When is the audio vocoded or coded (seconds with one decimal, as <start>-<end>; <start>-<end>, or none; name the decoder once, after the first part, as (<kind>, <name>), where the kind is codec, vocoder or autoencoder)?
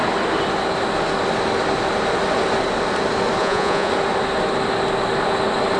3.4-3.9 (vocoder, Vocos)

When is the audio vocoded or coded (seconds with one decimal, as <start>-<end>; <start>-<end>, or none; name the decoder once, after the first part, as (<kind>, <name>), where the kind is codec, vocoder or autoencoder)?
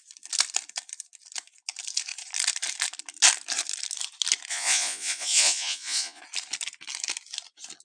4.5-6.2 (vocoder, Vocos)